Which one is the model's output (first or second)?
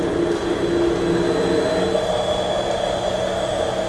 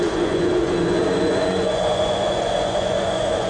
second